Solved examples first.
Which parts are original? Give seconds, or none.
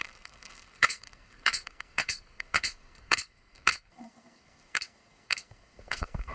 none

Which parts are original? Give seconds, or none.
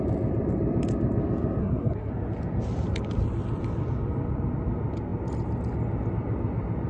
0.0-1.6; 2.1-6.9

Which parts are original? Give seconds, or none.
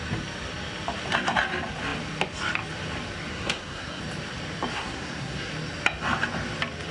0.0-3.3; 4.0-4.7; 5.5-6.9